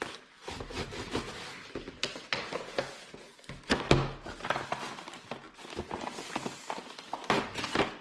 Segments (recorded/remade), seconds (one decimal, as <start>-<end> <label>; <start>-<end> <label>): 0.0-8.0 recorded